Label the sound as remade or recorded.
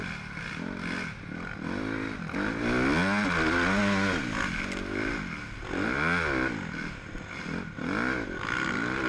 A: recorded